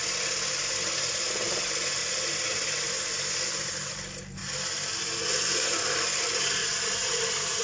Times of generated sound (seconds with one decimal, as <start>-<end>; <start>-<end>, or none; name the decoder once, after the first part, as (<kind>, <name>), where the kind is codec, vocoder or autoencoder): 2.0-3.1 (vocoder, BigVGAN v2); 6.6-7.6